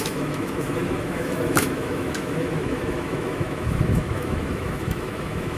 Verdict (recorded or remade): remade